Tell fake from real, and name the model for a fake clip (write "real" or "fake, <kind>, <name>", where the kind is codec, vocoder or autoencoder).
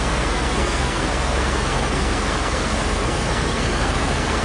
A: fake, codec, SNAC